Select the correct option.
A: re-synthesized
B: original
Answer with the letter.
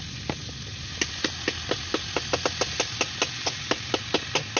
B